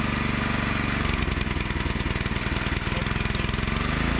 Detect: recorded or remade recorded